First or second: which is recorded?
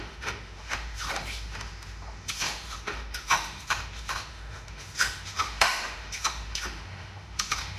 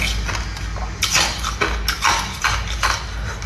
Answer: second